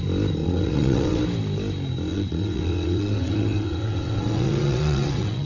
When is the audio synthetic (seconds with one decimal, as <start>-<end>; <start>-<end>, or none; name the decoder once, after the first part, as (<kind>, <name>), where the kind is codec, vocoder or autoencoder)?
0.4-1.2 (vocoder, WaveNeXt); 2.1-5.5

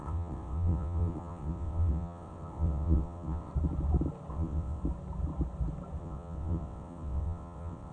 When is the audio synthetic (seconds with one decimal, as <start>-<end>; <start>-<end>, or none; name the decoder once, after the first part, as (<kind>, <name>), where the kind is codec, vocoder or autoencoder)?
0.0-3.5 (vocoder, WaveNeXt); 4.3-4.8; 6.0-7.9

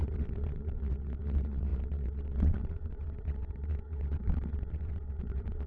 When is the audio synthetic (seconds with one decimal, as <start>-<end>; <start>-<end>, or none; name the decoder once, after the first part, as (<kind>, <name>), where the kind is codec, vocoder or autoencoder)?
0.0-5.7 (vocoder, WaveNeXt)

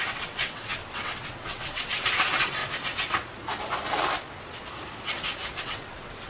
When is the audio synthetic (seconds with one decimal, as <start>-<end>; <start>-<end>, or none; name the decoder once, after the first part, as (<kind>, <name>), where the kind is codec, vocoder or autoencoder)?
0.0-2.6 (vocoder, WaveNeXt); 5.6-6.3

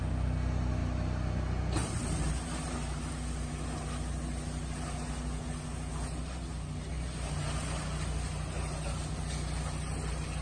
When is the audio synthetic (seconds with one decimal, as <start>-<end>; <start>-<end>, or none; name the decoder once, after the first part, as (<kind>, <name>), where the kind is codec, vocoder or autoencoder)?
none

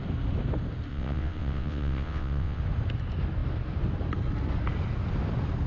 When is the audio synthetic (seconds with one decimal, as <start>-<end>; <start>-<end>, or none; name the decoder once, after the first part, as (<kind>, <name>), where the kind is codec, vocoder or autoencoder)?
0.9-2.6 (vocoder, WaveNeXt)

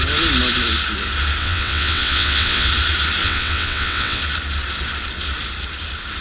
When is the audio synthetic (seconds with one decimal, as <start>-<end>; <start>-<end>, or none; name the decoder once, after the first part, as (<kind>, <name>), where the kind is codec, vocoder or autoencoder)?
1.4-2.7 (vocoder, WaveNeXt); 3.2-4.2